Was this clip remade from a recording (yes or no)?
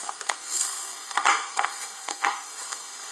yes